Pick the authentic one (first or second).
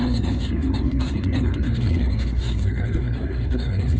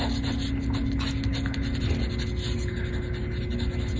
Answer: second